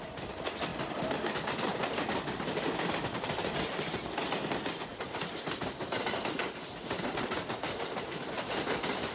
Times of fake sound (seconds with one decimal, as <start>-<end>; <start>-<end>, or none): 0.7-2.7